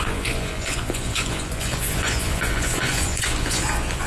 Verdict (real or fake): fake